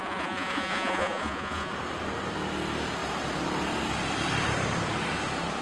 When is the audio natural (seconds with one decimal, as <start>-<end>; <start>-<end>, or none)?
1.7-5.6